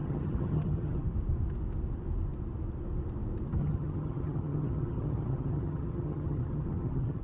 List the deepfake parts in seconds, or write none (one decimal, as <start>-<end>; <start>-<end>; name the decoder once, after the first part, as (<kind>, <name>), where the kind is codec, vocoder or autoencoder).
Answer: 0.0-1.0 (vocoder, HiFi-GAN); 3.6-7.2